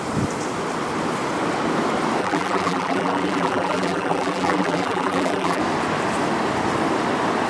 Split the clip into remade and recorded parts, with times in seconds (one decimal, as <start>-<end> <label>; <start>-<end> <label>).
0.0-2.2 recorded; 2.2-5.6 remade; 5.6-7.5 recorded